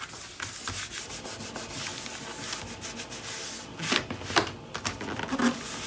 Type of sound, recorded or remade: recorded